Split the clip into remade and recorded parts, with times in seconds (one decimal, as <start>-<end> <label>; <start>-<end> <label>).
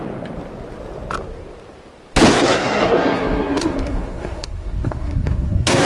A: 0.0-2.3 recorded; 2.3-5.9 remade